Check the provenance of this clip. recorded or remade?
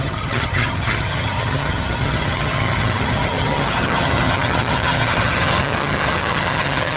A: remade